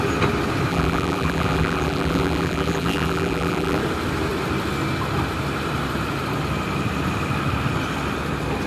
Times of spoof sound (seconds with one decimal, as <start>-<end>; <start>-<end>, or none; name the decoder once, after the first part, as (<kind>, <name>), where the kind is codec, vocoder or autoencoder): 0.7-3.8 (vocoder, BigVGAN v2)